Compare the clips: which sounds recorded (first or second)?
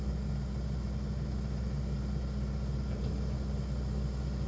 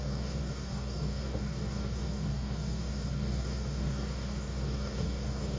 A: first